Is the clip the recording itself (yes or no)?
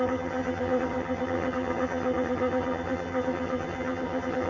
no